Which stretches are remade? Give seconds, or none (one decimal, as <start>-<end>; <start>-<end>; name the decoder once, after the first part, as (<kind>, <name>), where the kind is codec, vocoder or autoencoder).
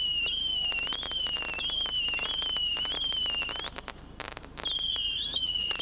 4.9-5.8 (vocoder, Vocos)